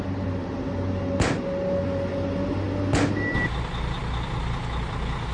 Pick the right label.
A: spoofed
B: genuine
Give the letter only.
B